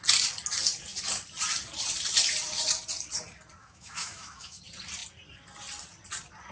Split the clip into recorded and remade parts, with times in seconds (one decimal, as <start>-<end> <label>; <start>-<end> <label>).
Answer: 0.0-3.6 recorded; 3.6-4.6 remade; 4.6-6.5 recorded